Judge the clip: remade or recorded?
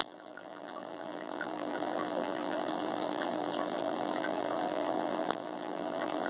remade